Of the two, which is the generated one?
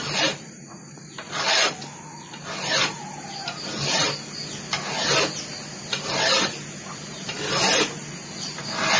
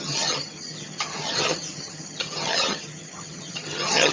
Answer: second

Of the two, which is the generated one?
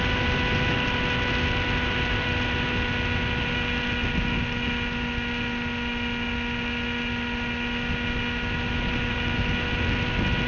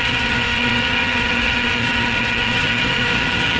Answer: second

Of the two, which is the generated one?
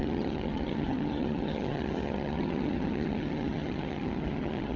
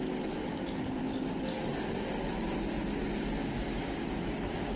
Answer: first